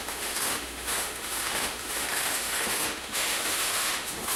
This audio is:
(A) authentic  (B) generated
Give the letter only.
B